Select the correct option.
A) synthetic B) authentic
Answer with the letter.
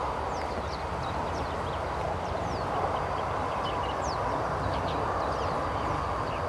B